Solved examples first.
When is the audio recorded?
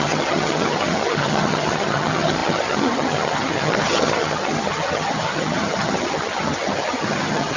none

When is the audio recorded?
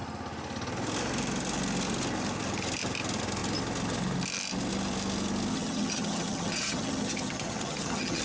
0.0-5.5